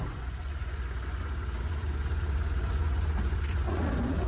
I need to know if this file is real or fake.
fake